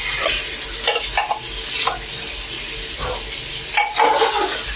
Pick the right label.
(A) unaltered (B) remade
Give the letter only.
A